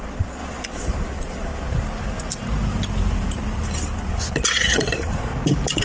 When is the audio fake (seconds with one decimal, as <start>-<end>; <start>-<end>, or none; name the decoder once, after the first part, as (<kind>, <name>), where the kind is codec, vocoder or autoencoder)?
0.0-1.5 (vocoder, Vocos); 4.3-5.3